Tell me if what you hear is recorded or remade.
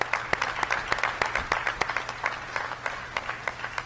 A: recorded